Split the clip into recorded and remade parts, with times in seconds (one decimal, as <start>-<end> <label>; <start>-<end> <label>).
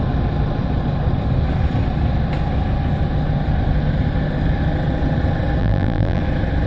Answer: 0.0-5.6 recorded; 5.6-6.2 remade; 6.2-6.7 recorded